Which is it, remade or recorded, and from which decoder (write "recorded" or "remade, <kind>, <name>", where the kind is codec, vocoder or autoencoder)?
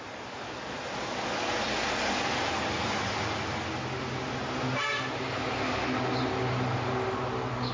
recorded